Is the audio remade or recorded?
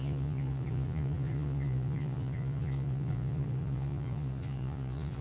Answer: remade